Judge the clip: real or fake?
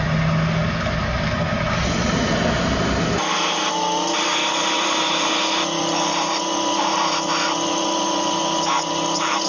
real